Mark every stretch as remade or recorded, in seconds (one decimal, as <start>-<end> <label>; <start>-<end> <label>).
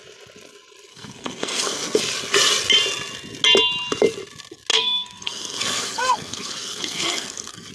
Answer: 0.0-0.9 recorded; 0.9-2.0 remade; 2.0-4.7 recorded; 4.7-7.7 remade